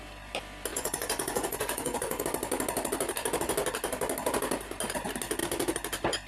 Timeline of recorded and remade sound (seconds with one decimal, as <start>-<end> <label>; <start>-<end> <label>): 0.0-0.7 recorded; 0.7-2.2 remade; 2.2-6.3 recorded